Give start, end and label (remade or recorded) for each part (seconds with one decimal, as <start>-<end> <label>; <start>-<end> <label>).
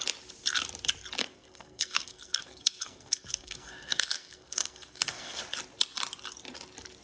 0.0-1.2 recorded; 1.2-5.4 remade; 5.4-7.0 recorded